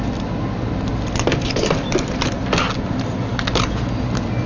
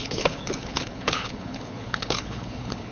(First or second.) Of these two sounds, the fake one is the second